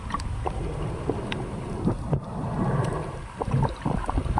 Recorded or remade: remade